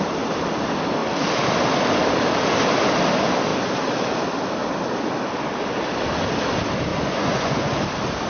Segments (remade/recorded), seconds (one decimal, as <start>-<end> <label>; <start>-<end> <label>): 0.0-6.9 recorded; 6.9-7.8 remade; 7.8-8.3 recorded